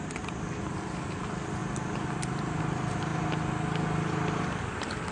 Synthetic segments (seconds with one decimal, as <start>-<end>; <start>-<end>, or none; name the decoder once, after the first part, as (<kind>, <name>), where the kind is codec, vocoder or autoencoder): none